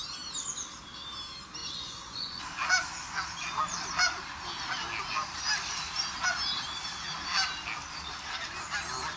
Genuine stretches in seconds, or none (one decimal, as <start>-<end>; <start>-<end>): 0.0-1.6; 2.4-9.2